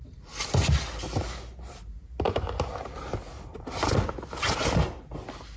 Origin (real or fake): real